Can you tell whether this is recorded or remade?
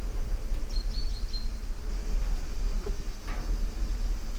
recorded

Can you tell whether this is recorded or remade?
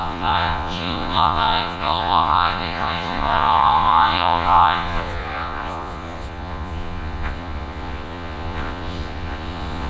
remade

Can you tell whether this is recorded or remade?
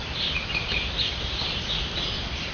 recorded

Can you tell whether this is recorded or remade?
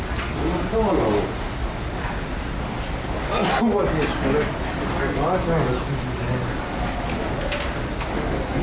recorded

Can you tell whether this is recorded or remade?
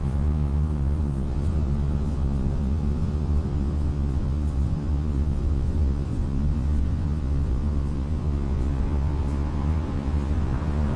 remade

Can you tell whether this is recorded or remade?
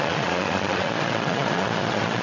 remade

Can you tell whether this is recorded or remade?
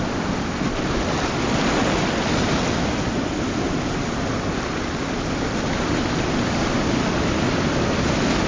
recorded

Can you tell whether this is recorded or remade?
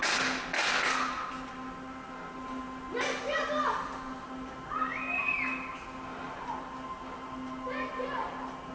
recorded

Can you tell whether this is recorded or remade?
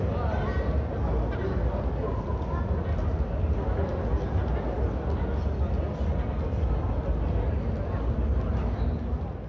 recorded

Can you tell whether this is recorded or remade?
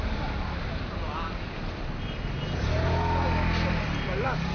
recorded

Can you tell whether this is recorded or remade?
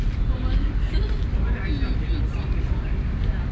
recorded